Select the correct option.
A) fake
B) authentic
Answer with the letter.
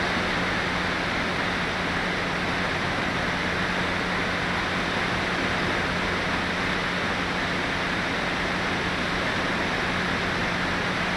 B